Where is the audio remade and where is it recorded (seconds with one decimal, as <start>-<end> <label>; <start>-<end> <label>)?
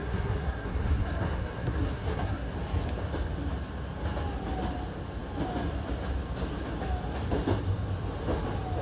0.0-2.5 remade; 2.5-8.8 recorded